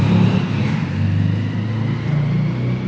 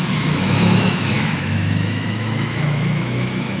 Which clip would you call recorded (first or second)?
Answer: first